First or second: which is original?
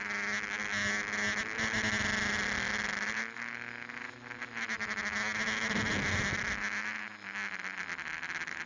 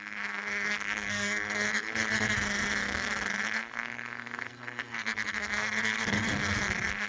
first